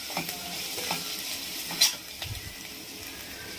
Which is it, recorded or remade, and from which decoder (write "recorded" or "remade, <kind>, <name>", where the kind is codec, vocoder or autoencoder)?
recorded